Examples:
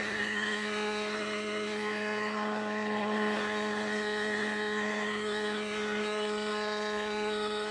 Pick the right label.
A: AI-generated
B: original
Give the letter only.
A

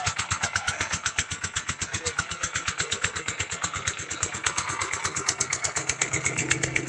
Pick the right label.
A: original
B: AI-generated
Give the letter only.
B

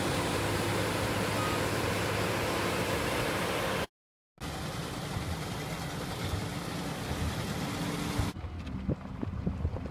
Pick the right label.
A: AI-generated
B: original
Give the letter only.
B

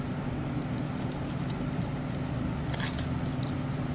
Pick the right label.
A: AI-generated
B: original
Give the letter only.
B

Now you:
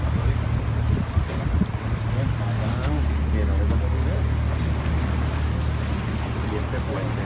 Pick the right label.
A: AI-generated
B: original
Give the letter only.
B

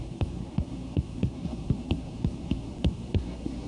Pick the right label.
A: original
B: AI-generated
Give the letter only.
B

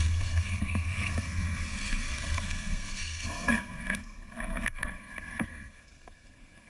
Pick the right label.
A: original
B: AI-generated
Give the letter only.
B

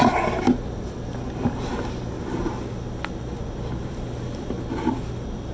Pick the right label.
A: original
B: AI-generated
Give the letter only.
A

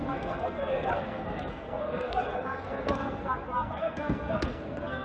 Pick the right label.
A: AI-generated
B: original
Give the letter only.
A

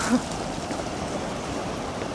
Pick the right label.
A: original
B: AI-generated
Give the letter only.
A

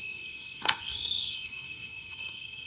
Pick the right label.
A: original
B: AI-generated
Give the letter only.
B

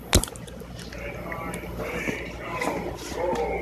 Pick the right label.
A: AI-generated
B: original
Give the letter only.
B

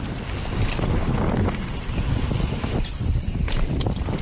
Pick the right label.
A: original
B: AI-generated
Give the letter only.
A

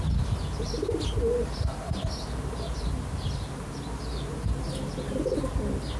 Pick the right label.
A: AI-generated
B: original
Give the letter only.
B